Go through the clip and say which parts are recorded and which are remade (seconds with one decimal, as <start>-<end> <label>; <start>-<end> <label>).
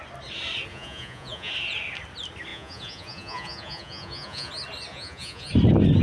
0.0-0.7 recorded; 0.7-1.5 remade; 1.5-2.5 recorded; 2.5-4.5 remade; 4.5-4.9 recorded; 4.9-5.5 remade; 5.5-6.0 recorded